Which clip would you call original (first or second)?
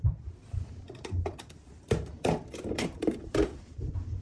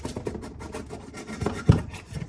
second